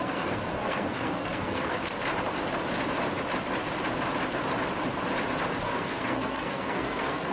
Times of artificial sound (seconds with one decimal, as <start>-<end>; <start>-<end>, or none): 0.0-1.8; 5.6-7.3